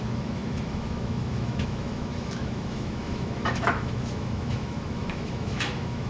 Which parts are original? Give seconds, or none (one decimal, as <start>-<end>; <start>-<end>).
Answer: none